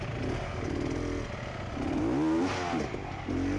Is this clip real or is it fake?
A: real